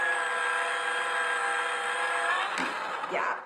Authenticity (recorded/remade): recorded